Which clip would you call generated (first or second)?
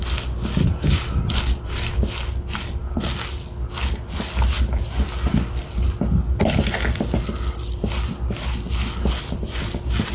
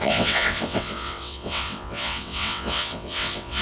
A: second